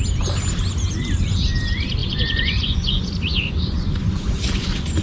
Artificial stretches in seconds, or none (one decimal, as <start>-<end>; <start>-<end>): 2.0-5.0